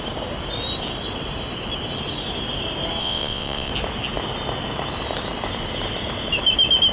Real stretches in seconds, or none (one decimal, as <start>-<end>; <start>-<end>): 0.0-3.0; 3.7-6.9